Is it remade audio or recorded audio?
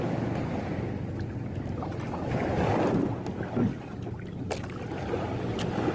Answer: recorded